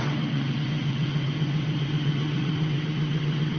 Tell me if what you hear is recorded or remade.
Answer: remade